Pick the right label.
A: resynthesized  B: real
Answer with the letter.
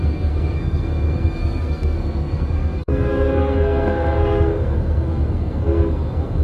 A